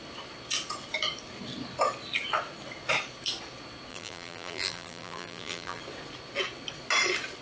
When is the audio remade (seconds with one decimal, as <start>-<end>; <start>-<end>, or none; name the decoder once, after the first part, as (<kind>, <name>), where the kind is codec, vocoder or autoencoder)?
3.9-5.8 (vocoder, BigVGAN v2)